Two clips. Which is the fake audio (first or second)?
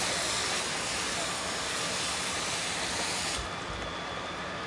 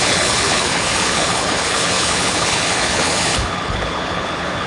second